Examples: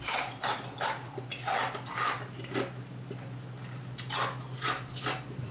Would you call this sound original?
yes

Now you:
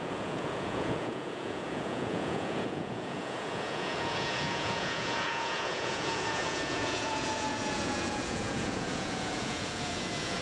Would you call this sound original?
no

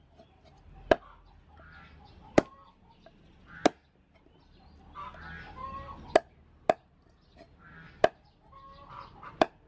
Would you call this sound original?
yes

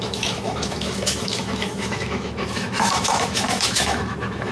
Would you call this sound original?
no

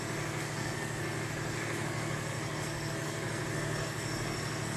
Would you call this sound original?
no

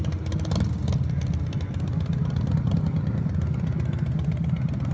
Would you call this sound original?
yes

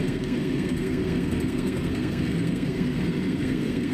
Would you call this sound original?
no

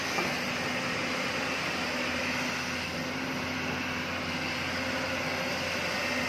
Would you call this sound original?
yes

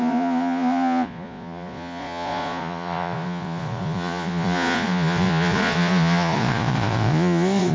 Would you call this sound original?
no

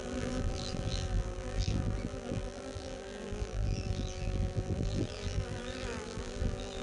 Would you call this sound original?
no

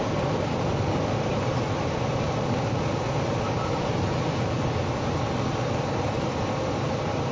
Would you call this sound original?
yes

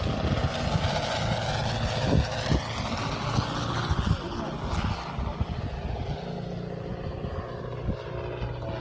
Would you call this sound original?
yes